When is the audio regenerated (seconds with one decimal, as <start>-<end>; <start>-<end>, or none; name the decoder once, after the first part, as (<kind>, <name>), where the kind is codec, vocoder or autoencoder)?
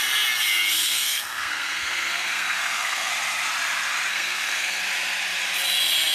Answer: 0.7-3.1 (codec, SNAC); 4.1-4.8